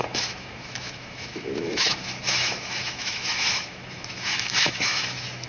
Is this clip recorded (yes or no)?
no